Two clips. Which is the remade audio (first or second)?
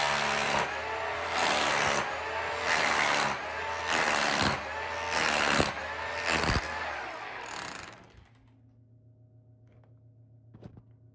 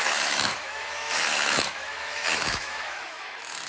second